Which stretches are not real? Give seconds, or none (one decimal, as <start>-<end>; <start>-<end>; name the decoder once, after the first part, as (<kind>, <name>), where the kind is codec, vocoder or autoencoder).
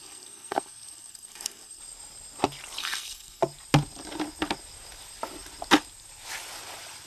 0.0-1.8 (codec, SNAC); 2.8-3.4